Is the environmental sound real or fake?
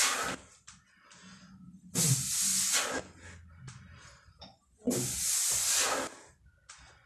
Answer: real